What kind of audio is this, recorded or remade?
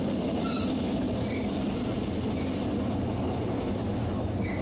recorded